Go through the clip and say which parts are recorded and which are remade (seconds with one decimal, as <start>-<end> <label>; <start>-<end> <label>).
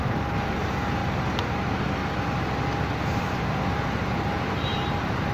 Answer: 0.0-1.0 remade; 1.0-1.5 recorded; 1.5-2.0 remade; 2.0-3.1 recorded; 3.1-5.3 remade